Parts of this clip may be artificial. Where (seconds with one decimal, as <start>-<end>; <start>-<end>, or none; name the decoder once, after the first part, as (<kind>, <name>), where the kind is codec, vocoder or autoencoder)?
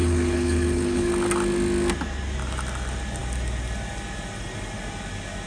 0.0-1.1 (codec, HILCodec)